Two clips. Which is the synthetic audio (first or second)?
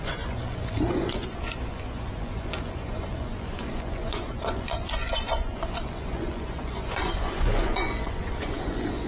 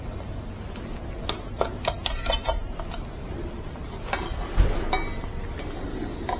first